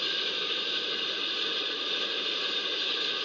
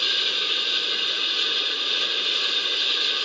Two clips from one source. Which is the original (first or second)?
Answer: second